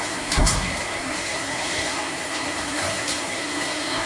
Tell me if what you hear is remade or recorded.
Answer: remade